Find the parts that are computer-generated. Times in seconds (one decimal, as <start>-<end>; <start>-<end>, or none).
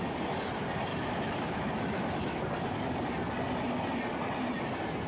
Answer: 0.9-2.4